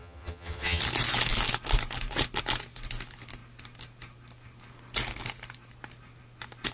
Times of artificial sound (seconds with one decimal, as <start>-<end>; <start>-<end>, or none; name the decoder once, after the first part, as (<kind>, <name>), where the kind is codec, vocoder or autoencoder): 0.0-0.8 (vocoder, HiFi-GAN)